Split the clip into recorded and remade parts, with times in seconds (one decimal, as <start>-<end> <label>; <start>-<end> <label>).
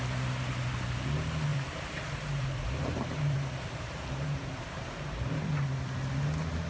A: 0.0-1.5 recorded; 1.5-5.5 remade; 5.5-6.7 recorded